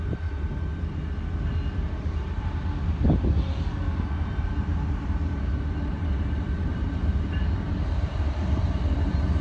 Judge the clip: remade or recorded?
recorded